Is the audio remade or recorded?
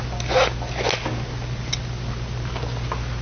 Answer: recorded